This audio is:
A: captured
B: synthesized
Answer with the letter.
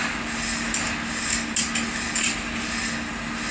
A